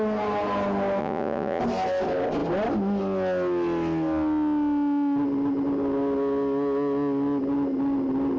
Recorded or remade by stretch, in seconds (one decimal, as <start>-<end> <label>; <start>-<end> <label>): 0.0-1.0 recorded; 1.0-1.6 remade; 1.6-8.4 recorded